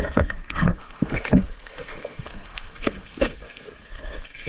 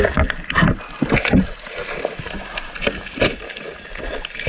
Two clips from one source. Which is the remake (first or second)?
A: first